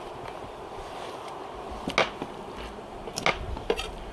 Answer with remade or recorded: recorded